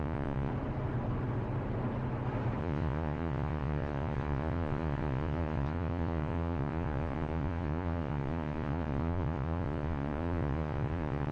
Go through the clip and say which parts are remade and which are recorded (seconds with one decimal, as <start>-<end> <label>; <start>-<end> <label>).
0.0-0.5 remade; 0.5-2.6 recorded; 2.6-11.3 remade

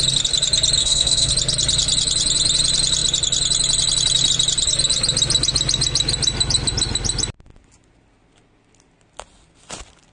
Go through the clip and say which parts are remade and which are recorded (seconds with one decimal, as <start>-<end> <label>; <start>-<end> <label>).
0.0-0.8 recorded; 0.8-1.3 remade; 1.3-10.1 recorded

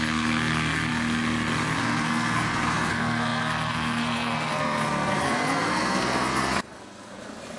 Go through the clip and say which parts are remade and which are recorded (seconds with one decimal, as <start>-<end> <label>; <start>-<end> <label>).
0.0-0.9 remade; 0.9-1.8 recorded; 1.8-7.6 remade